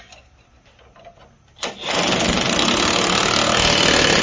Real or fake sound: real